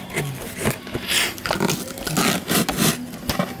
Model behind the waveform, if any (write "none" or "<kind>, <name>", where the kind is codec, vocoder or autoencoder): none